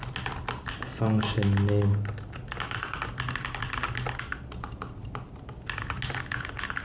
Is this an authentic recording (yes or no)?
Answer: yes